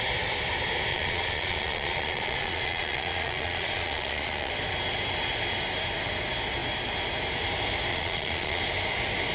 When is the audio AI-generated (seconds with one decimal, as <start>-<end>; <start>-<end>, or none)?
0.9-4.5; 7.9-8.6